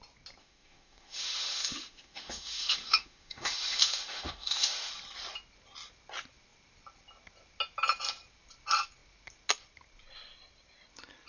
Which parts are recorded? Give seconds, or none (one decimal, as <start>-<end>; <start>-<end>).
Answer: 0.0-0.4; 4.9-11.3